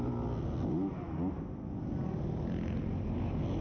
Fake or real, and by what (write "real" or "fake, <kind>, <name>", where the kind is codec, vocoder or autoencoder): real